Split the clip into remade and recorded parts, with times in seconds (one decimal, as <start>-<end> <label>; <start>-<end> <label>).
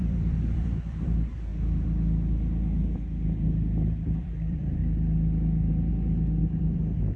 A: 0.0-1.5 remade; 1.5-4.2 recorded; 4.2-4.8 remade; 4.8-5.9 recorded; 5.9-7.2 remade